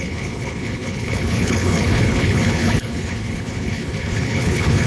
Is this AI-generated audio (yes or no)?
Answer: yes